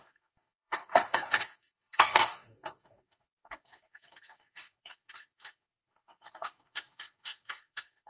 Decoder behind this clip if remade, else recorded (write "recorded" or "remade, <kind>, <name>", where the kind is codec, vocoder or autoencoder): remade, codec, DAC